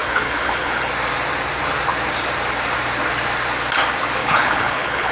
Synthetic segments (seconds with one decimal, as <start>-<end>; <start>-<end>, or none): 0.0-0.9; 4.2-5.1